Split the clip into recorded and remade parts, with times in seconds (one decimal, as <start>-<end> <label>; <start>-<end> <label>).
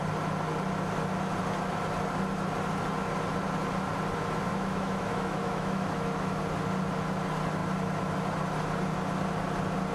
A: 0.0-4.5 recorded; 4.5-6.4 remade; 6.4-9.9 recorded